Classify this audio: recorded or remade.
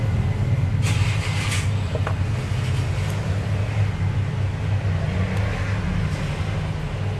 recorded